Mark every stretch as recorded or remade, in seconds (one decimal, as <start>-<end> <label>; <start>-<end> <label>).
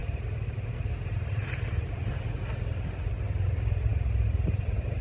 0.0-2.2 remade; 2.2-5.0 recorded